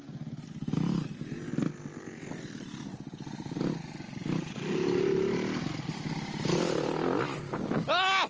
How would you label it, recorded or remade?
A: recorded